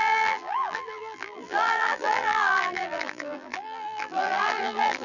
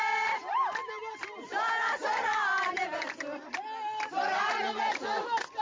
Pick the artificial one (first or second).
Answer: first